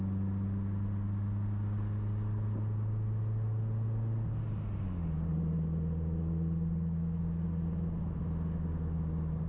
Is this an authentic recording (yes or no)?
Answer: yes